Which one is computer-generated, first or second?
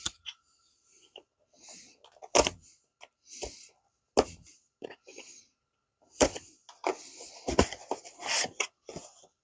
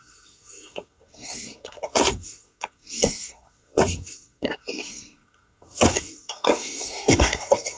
second